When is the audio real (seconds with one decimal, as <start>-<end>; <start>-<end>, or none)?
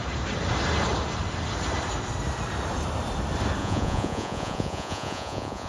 0.0-3.6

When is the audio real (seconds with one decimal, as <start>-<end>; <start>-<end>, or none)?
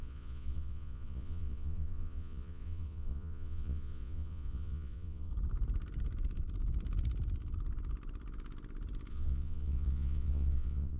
5.3-9.1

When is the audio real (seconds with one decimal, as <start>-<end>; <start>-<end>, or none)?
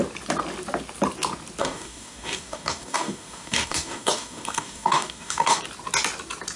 0.0-1.6; 5.6-6.6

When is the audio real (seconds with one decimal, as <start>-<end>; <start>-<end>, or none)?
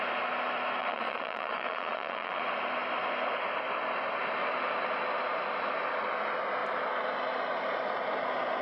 0.0-0.8; 2.4-8.6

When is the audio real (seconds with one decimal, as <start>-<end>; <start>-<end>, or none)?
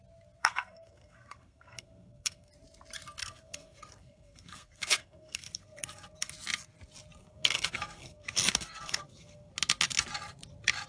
0.0-0.4; 2.5-3.2; 6.3-7.2; 9.5-10.9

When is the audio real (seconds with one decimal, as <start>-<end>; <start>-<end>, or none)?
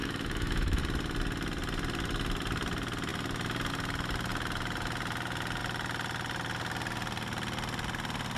0.8-8.4